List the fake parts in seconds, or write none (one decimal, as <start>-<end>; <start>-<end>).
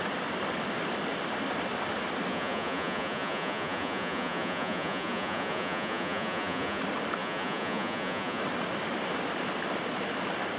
2.3-6.8; 7.2-8.4